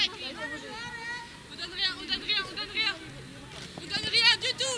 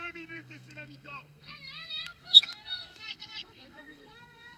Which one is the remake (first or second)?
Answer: second